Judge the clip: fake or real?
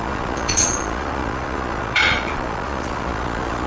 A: fake